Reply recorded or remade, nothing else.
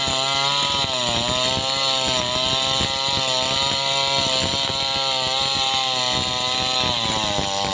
recorded